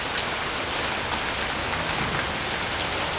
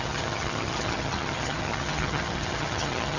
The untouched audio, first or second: first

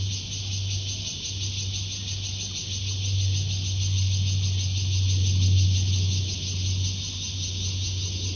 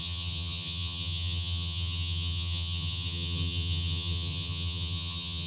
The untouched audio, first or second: first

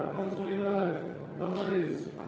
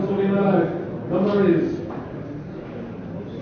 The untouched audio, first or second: second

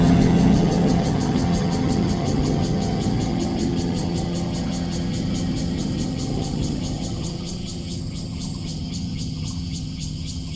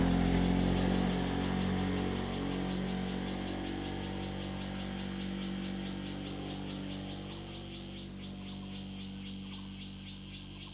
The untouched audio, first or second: second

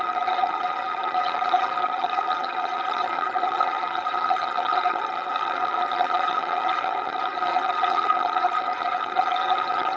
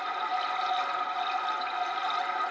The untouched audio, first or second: second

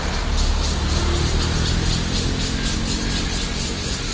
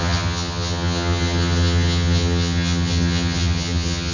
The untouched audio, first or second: first